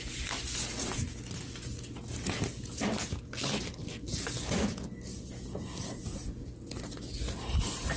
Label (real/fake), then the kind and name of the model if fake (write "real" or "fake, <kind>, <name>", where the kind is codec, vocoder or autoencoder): real